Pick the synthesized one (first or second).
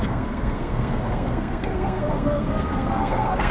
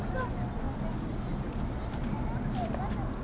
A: first